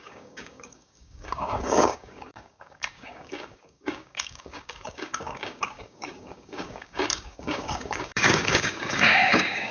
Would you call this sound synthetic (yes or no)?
yes